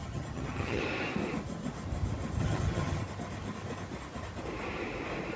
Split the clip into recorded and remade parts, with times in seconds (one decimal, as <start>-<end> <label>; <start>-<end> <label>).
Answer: 0.0-0.8 remade; 0.8-2.4 recorded; 2.4-3.0 remade; 3.0-5.4 recorded